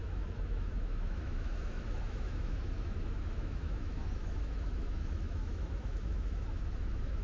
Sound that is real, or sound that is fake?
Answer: fake